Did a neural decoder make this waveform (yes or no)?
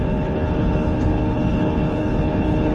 yes